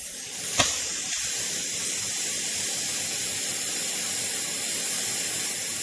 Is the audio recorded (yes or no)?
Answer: yes